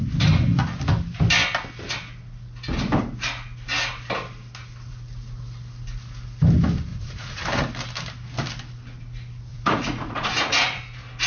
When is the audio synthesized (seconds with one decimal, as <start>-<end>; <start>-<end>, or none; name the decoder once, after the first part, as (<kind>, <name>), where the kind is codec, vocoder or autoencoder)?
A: 6.9-7.4 (vocoder, Vocos); 9.5-10.8